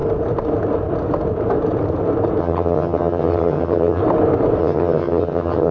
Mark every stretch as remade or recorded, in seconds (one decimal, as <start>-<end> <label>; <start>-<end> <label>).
0.0-2.4 recorded; 2.4-4.0 remade; 4.0-4.6 recorded; 4.6-5.7 remade